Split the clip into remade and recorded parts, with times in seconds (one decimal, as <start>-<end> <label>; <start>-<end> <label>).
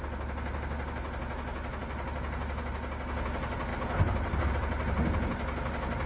0.0-6.1 recorded